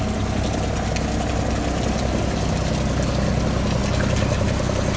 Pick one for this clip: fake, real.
real